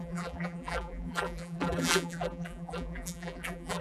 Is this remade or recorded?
remade